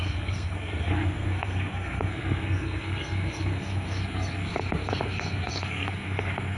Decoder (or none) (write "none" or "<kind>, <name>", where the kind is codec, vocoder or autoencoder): codec, SNAC